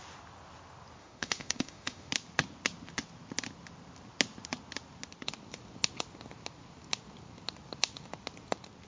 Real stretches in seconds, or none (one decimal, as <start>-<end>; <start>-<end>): 0.0-1.0; 2.1-8.9